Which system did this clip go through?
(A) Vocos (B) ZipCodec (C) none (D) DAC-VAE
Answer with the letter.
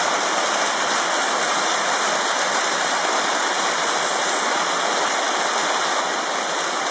C